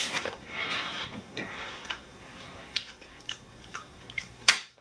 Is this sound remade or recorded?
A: remade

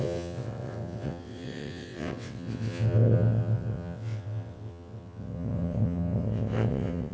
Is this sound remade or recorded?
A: remade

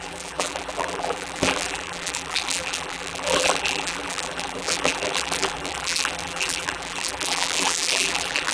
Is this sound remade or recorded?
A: remade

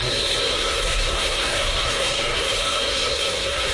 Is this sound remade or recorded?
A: remade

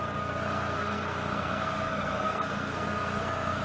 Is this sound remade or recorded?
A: remade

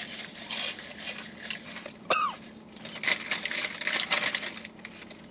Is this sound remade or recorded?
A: recorded